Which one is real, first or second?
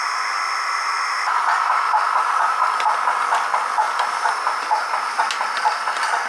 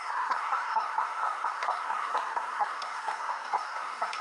first